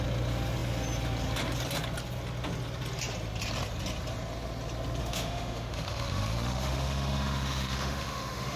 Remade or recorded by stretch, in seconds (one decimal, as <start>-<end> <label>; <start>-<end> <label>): 0.0-5.0 recorded; 5.0-8.6 remade